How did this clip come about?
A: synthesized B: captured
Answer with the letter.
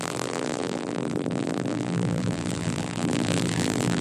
A